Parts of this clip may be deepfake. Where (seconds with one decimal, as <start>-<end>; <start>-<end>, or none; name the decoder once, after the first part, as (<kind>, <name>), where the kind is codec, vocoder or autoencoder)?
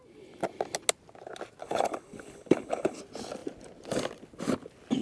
1.6-3.0 (codec, HILCodec)